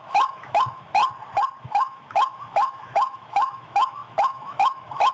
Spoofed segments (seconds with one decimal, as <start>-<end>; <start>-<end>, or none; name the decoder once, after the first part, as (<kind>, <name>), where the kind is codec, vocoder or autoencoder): 0.0-1.0 (autoencoder, DAC-VAE); 1.6-5.1